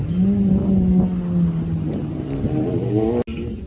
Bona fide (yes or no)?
yes